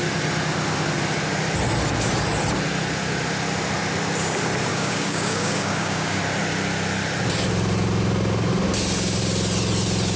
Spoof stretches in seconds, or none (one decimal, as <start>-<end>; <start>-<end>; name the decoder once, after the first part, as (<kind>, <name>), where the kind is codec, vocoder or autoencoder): 4.7-6.2 (codec, DAC)